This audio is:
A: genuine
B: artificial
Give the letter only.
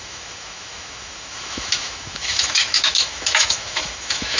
B